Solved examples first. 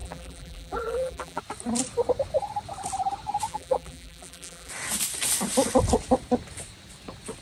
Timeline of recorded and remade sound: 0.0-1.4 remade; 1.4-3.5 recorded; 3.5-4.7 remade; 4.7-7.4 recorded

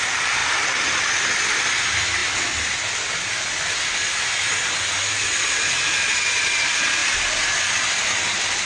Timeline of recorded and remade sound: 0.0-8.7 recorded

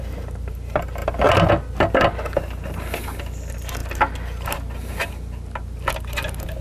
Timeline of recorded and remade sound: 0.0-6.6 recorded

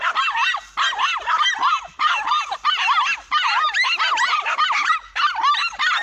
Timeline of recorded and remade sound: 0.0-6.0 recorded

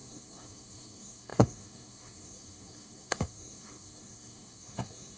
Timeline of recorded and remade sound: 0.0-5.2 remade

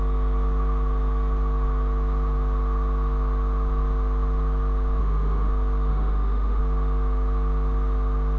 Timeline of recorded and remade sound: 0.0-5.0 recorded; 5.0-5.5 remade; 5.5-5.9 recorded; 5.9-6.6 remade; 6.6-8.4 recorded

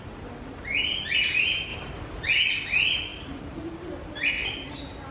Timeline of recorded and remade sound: 0.0-5.1 recorded